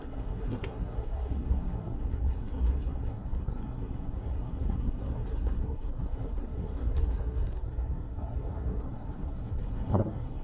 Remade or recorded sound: remade